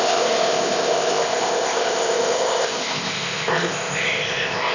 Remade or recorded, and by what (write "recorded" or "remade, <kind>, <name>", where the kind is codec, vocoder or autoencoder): remade, codec, ZipCodec